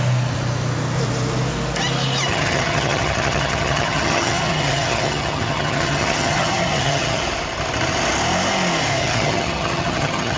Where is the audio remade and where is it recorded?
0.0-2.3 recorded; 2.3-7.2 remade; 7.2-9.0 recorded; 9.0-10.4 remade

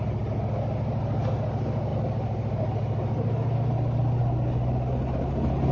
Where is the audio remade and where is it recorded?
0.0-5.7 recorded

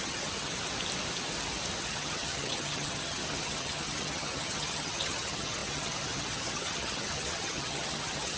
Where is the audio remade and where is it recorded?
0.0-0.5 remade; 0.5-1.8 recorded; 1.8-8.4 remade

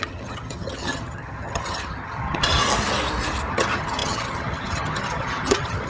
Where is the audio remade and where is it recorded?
0.0-2.6 remade; 2.6-3.5 recorded; 3.5-5.9 remade